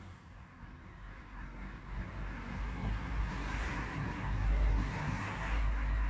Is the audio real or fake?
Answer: fake